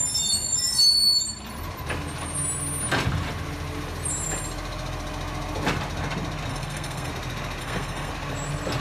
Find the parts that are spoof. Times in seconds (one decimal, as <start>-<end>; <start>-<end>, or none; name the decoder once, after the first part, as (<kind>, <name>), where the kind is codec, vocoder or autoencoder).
6.5-7.1 (codec, SNAC); 7.6-8.1